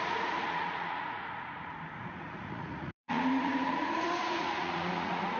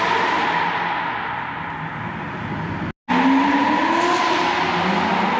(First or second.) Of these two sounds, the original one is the second